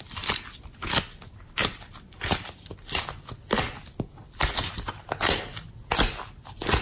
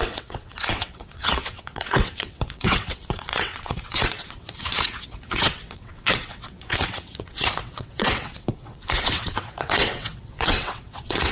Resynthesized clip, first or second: second